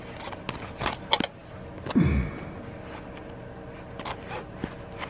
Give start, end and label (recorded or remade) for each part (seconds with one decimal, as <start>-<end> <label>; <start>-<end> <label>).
0.0-5.1 recorded